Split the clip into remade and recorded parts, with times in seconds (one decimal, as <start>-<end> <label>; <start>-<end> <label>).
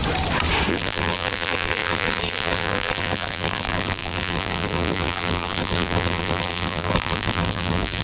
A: 0.0-0.7 recorded; 0.7-8.0 remade